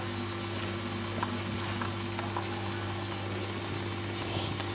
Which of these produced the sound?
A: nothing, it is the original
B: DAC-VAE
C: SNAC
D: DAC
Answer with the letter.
A